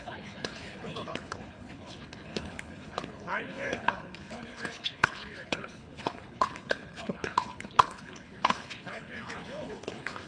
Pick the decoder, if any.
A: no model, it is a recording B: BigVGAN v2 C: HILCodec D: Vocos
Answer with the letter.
C